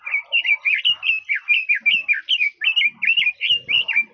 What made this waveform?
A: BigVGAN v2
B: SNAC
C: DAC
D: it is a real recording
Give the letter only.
D